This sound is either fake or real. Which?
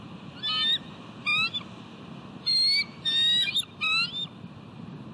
real